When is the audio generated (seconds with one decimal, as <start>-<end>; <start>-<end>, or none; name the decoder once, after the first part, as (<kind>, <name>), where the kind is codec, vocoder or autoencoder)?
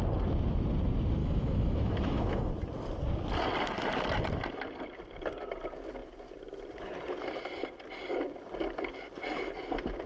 1.2-2.5 (autoencoder, DAC-VAE)